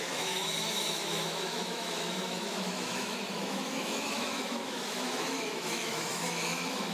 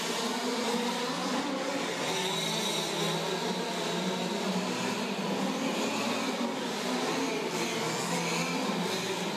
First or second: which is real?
second